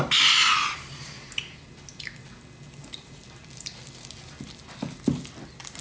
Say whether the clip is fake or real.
real